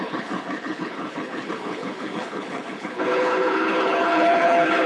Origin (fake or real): fake